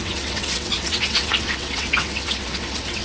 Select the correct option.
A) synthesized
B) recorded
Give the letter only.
A